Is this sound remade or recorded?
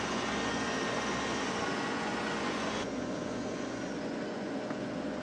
remade